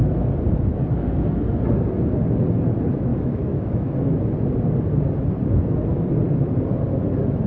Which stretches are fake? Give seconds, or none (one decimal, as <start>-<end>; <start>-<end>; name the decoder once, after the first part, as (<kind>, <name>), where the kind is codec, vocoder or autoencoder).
3.1-4.2 (autoencoder, DAC-VAE)